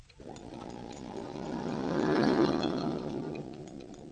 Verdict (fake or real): fake